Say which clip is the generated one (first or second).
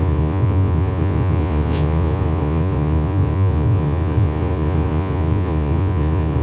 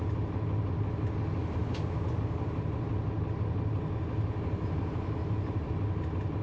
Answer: first